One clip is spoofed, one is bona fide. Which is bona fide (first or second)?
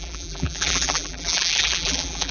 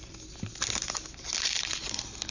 second